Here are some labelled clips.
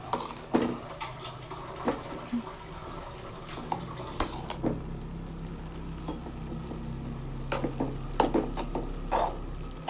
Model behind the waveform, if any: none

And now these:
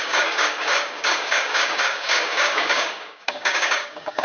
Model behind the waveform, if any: codec, DAC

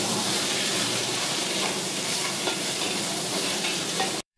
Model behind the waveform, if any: vocoder, BigVGAN v2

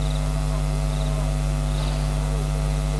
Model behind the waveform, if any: none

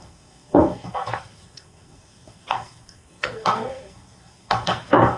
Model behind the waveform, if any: codec, SNAC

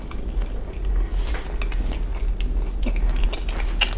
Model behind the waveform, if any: none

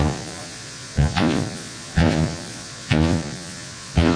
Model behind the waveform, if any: vocoder, Vocos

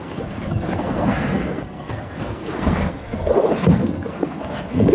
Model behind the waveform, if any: codec, SNAC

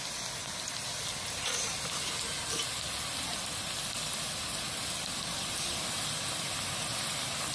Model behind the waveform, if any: none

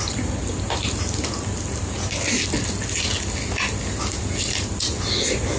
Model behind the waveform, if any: none